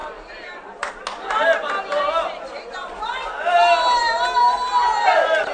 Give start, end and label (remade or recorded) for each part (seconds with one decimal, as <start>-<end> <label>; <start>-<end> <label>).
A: 0.0-0.9 remade; 0.9-5.5 recorded